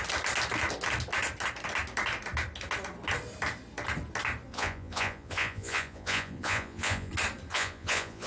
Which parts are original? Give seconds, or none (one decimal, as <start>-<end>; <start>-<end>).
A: 0.0-4.5; 7.1-7.5